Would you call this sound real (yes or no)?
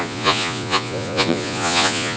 no